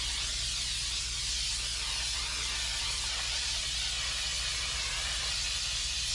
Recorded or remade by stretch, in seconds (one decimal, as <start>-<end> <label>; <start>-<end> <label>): 0.0-2.7 recorded; 2.7-3.6 remade; 3.6-6.1 recorded

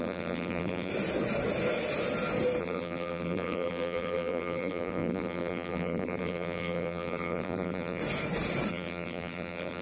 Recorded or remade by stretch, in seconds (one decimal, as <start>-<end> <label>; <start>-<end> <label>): 0.0-0.9 remade; 0.9-2.6 recorded; 2.6-8.0 remade; 8.0-8.7 recorded; 8.7-9.8 remade

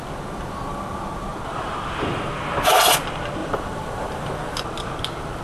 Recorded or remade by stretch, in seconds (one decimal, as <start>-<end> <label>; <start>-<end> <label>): 0.0-1.3 recorded; 1.3-1.9 remade; 1.9-3.4 recorded; 3.4-4.3 remade; 4.3-5.4 recorded